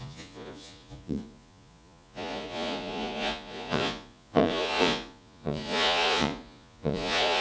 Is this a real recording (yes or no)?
no